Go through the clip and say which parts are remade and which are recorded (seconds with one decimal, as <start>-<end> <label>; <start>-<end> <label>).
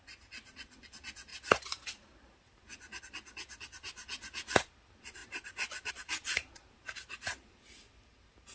0.0-8.5 recorded